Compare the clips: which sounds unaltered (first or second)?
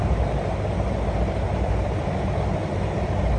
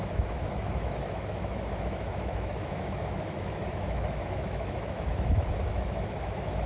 first